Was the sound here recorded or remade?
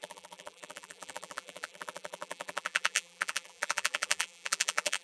remade